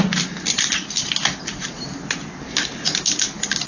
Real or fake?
real